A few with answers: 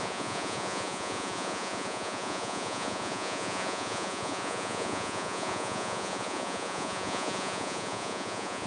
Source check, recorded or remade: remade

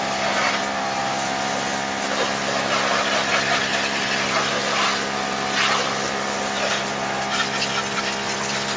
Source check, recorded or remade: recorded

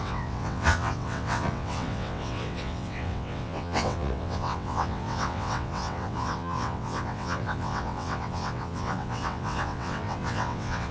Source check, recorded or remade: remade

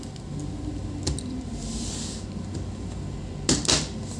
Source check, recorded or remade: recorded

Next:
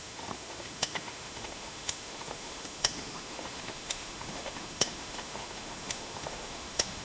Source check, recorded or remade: remade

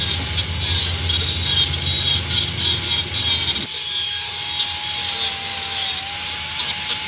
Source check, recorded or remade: recorded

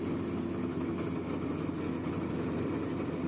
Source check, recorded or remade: recorded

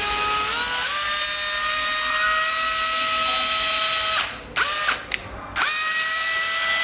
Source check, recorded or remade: recorded